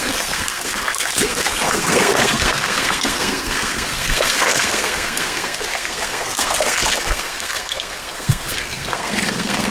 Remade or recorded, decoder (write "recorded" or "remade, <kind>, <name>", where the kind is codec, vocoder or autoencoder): remade, codec, SNAC